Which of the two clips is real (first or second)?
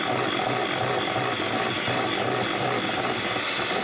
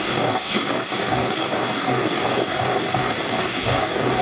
first